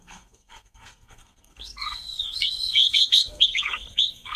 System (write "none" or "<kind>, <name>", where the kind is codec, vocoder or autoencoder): codec, SNAC